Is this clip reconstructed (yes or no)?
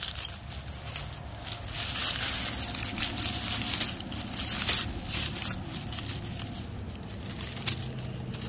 no